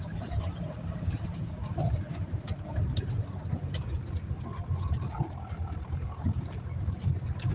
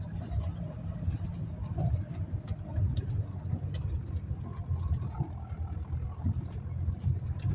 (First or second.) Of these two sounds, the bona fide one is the second